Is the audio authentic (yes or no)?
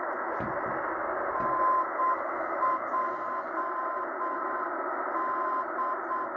yes